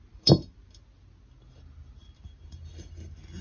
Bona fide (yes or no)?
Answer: yes